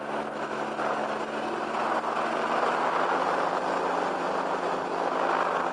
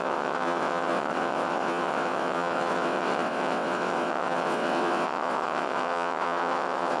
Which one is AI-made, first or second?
second